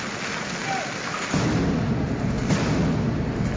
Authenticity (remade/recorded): recorded